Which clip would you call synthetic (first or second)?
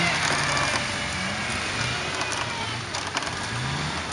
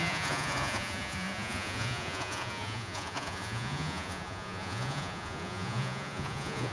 second